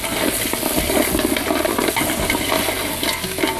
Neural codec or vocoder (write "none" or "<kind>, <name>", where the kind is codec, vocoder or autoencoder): none